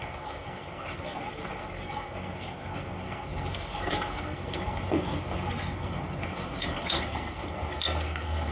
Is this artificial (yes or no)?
yes